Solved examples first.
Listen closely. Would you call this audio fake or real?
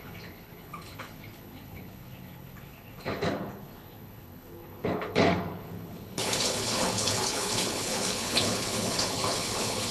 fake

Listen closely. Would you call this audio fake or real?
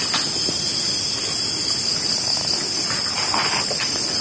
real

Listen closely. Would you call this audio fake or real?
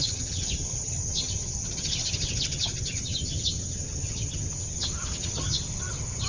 fake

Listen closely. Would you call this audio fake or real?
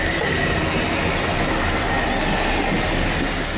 real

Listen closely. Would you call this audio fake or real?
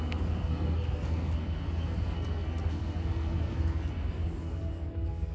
fake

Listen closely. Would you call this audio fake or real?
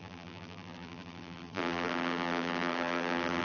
fake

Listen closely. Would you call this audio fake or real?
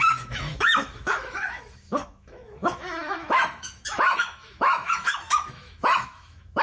fake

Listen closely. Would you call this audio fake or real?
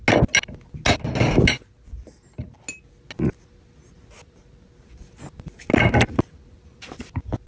real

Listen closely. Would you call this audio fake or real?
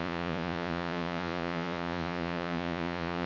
fake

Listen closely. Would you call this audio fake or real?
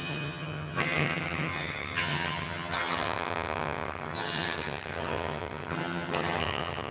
fake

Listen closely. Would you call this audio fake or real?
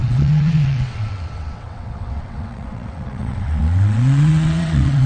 fake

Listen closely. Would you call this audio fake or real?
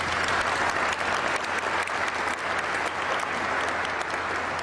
real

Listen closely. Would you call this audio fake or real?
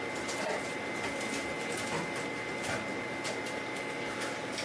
real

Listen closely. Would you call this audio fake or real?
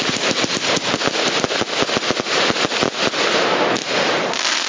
real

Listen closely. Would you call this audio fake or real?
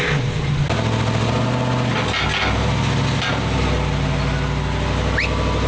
real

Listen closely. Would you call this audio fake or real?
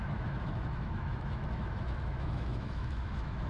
fake